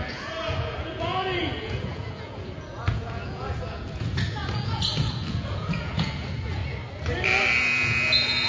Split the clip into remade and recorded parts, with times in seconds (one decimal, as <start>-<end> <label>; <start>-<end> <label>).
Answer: 0.0-6.6 remade; 6.6-7.6 recorded; 7.6-8.5 remade